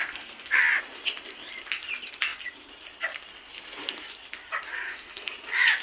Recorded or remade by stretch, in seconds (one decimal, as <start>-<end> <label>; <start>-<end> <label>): 0.0-0.6 remade; 0.6-4.7 recorded; 4.7-5.3 remade; 5.3-5.8 recorded